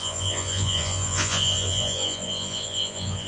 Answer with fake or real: fake